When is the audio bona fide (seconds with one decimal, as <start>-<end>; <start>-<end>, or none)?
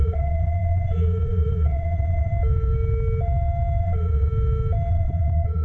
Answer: 2.3-3.8; 4.3-4.9